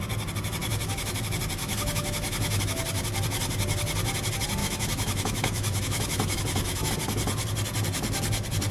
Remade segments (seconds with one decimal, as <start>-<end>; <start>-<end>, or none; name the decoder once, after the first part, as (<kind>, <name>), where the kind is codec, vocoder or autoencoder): 0.6-1.2 (autoencoder, DAC-VAE); 1.6-2.6; 4.6-6.9